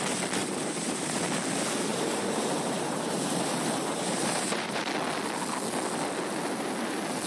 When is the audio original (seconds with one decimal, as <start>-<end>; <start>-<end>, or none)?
0.0-0.4; 1.2-1.9; 4.8-7.3

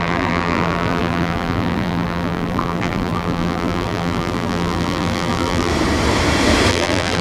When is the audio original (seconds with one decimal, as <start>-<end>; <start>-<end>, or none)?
5.7-6.7

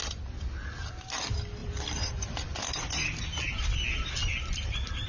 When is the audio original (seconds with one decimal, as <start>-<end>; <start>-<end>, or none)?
0.0-1.6; 3.6-5.1

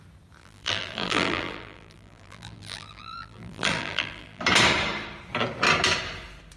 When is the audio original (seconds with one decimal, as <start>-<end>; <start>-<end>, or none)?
0.0-0.4; 4.4-6.6

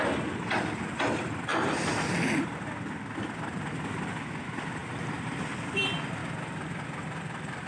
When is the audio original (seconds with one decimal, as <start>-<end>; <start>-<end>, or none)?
0.0-1.5; 2.4-4.8; 5.8-6.2

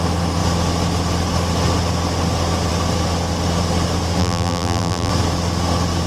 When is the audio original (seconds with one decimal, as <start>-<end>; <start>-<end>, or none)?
0.0-4.2; 5.1-6.1

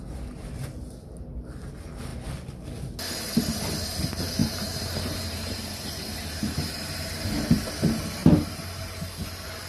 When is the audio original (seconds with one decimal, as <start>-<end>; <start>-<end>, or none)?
0.0-4.4; 7.1-8.2; 8.8-9.7

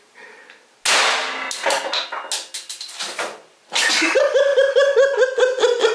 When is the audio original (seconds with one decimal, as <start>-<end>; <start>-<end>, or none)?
0.4-3.9; 4.5-5.9